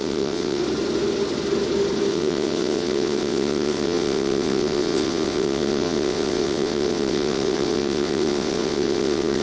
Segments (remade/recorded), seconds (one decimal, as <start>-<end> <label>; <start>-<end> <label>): 0.0-0.6 remade; 0.6-2.1 recorded; 2.1-9.4 remade

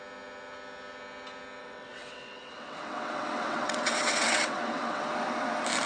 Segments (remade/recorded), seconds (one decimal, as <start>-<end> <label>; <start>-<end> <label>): 0.0-1.6 recorded; 1.6-5.1 remade; 5.1-5.9 recorded

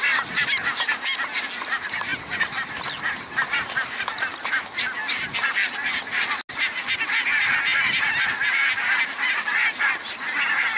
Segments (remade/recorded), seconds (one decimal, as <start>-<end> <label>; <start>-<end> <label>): 0.0-10.8 recorded

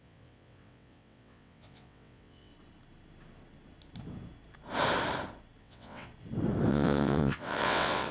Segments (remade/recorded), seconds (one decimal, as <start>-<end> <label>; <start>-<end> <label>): 0.0-2.5 remade; 2.5-5.6 recorded; 5.6-6.1 remade; 6.1-6.7 recorded; 6.7-8.1 remade

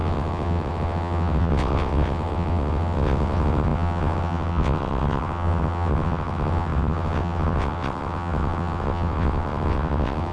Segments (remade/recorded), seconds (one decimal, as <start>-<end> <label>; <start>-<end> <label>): 0.0-10.3 remade